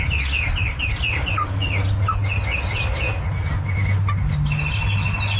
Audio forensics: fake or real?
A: real